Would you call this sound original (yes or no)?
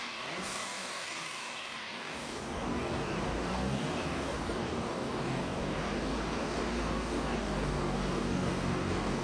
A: no